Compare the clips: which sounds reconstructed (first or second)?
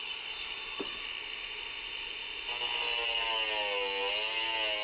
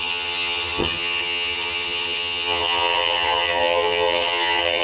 second